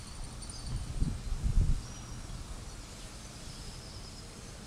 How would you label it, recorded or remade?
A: recorded